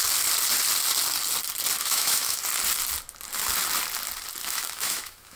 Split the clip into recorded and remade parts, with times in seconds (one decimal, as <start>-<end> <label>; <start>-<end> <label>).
0.0-1.8 recorded; 1.8-2.4 remade; 2.4-4.4 recorded; 4.4-5.4 remade